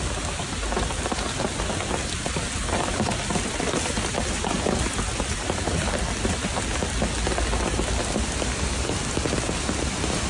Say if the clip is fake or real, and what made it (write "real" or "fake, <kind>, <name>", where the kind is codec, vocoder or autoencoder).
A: real